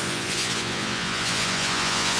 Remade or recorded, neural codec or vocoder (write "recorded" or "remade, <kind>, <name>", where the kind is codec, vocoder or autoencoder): remade, vocoder, Vocos